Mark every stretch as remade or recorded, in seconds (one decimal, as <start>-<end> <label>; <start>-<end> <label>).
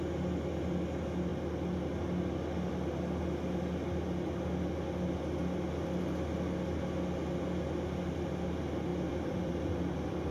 0.0-8.9 recorded; 8.9-10.3 remade